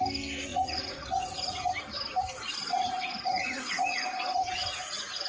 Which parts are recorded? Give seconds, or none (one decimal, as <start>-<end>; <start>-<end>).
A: 0.0-0.5; 1.7-2.7